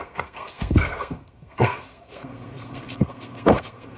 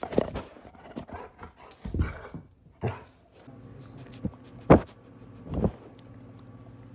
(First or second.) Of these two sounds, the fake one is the first